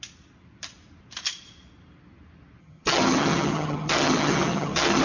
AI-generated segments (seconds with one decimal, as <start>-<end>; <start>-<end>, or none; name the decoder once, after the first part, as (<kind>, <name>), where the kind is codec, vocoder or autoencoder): 2.6-5.0 (vocoder, HiFi-GAN)